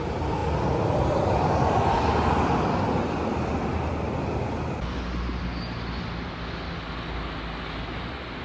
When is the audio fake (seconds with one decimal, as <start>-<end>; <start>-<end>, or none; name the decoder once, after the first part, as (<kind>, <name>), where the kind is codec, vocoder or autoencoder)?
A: none